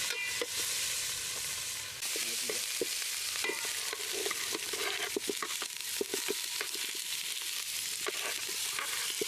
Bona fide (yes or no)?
no